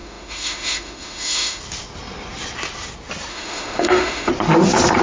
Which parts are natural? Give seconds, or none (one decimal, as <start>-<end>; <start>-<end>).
1.6-3.3; 4.3-5.0